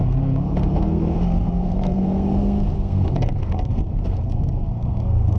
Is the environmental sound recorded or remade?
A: remade